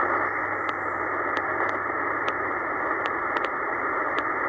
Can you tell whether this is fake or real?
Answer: fake